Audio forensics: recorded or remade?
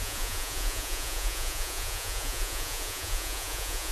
remade